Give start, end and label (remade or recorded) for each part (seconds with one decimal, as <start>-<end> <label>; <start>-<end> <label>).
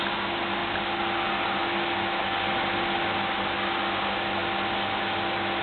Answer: 0.0-5.6 recorded